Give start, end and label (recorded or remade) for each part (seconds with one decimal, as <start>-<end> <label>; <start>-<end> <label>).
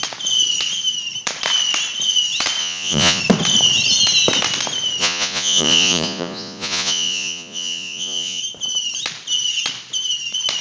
0.0-2.6 recorded; 2.6-3.2 remade; 3.2-5.0 recorded; 5.0-8.4 remade; 8.4-10.6 recorded